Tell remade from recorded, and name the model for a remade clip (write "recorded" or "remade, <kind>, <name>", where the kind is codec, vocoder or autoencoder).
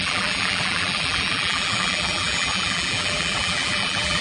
remade, vocoder, BigVGAN v2